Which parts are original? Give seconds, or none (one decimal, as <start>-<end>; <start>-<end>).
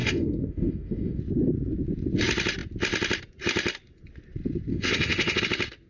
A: 1.2-4.7; 5.4-5.9